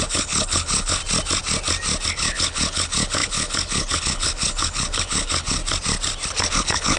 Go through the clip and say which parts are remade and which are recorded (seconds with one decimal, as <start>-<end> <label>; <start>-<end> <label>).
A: 0.0-1.0 remade; 1.0-2.1 recorded; 2.1-5.6 remade; 5.6-6.5 recorded; 6.5-7.0 remade